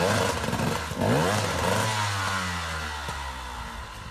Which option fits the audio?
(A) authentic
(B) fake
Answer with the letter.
A